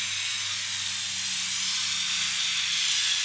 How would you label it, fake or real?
real